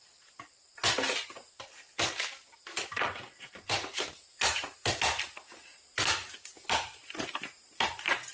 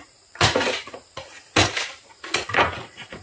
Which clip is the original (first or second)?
first